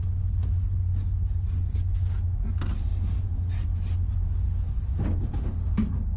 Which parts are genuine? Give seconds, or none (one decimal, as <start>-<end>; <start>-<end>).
0.0-6.2

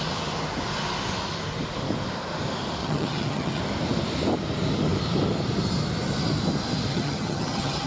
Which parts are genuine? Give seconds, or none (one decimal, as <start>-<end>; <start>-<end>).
0.0-2.8; 3.6-6.9

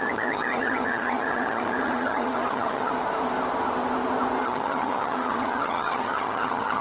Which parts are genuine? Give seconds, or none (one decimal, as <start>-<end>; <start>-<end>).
2.9-4.4

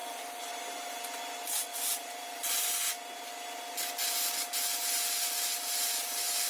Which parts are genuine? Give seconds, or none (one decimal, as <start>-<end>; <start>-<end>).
0.5-1.7; 2.7-6.5

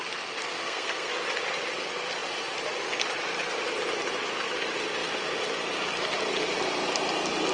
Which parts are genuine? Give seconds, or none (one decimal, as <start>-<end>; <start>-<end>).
0.0-0.4; 1.1-7.5

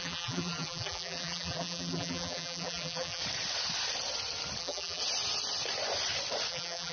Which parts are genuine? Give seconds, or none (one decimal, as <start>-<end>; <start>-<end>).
3.2-4.6; 5.0-6.5